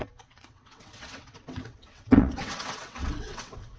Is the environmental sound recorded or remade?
remade